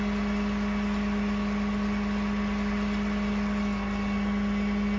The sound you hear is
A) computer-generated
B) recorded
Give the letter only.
B